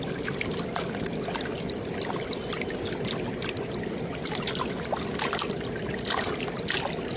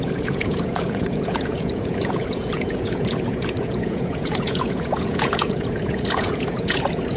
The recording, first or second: first